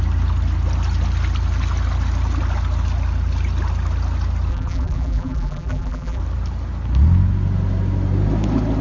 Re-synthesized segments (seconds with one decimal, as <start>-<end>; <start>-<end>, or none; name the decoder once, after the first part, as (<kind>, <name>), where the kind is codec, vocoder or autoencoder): 4.5-6.2 (vocoder, BigVGAN v2)